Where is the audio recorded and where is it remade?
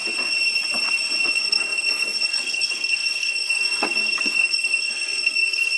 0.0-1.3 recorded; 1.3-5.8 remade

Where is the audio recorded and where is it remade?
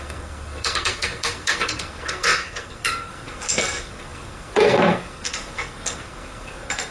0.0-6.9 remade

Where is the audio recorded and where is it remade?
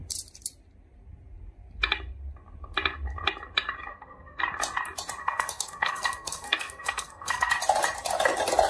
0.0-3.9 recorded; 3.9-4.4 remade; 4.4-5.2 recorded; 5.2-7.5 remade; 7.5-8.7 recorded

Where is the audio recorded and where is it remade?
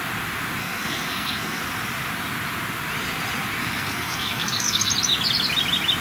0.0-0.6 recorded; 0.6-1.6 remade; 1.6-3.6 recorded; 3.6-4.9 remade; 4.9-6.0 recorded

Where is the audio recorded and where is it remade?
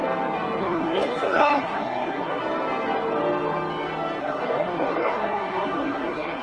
0.0-0.6 recorded; 0.6-2.4 remade; 2.4-4.2 recorded; 4.2-6.4 remade